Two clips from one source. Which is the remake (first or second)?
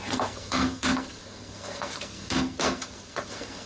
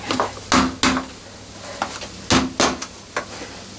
first